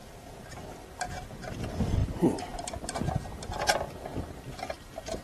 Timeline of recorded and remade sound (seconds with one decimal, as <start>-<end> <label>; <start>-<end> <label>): 0.0-2.0 recorded; 2.0-3.0 remade; 3.0-5.2 recorded